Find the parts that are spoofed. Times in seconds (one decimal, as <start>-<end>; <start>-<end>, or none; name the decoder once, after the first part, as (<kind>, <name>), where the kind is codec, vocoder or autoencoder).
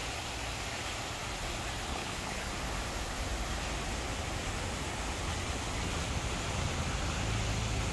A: 1.9-2.5 (codec, HILCodec)